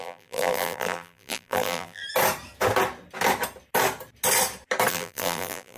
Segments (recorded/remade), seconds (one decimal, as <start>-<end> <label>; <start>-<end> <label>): 0.0-2.0 remade; 2.0-4.9 recorded; 4.9-5.8 remade